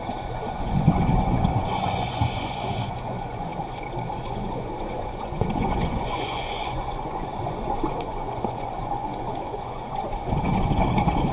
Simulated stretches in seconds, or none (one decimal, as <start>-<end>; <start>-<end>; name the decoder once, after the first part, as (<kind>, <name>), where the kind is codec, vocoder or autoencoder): 0.0-3.5 (vocoder, Vocos); 4.1-11.3